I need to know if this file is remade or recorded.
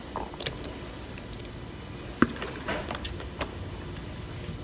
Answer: recorded